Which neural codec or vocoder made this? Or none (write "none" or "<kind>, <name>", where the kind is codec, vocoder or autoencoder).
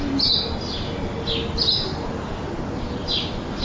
none